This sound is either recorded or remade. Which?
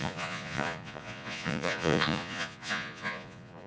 remade